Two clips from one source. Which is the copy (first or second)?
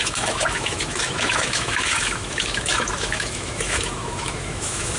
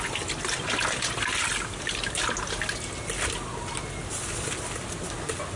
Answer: first